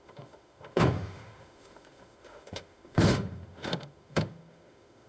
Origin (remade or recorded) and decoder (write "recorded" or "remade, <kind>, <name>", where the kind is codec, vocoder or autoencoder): remade, autoencoder, DAC-VAE